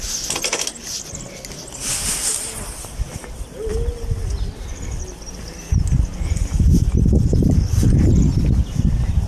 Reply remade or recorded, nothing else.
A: recorded